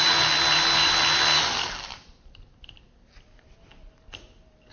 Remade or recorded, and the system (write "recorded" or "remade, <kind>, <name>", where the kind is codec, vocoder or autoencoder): recorded